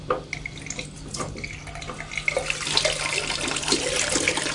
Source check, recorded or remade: recorded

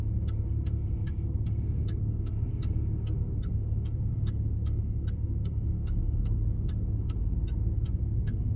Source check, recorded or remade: remade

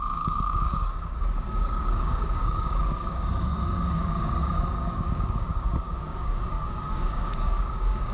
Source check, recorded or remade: remade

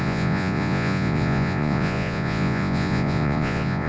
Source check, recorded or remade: remade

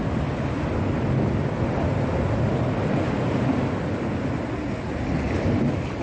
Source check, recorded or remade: recorded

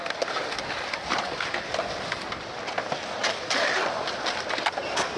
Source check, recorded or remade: recorded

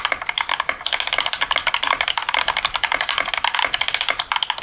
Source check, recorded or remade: recorded